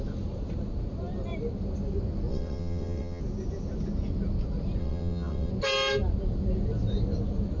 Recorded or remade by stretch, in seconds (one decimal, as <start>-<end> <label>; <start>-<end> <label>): 0.0-2.3 recorded; 2.3-3.2 remade; 3.2-4.8 recorded; 4.8-5.5 remade; 5.5-7.6 recorded